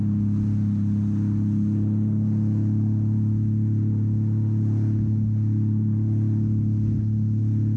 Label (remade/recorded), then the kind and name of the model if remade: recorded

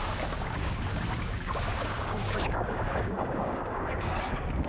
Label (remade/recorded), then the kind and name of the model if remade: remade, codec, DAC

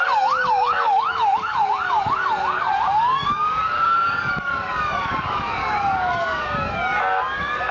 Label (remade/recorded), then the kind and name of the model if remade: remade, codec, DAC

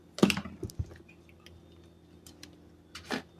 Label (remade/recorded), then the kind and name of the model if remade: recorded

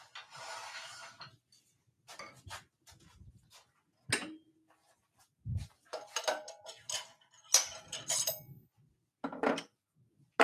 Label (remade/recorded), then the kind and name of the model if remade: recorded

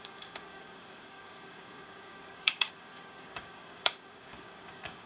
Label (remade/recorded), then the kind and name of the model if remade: remade, codec, DAC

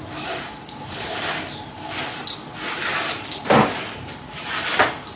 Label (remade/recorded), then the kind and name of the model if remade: recorded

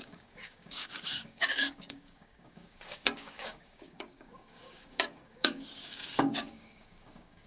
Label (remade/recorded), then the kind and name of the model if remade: remade, codec, DAC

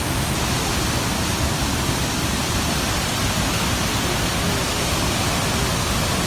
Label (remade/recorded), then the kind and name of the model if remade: recorded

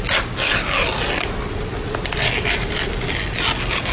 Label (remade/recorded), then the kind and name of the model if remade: recorded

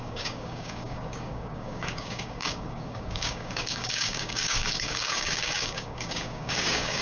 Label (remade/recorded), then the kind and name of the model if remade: remade, codec, DAC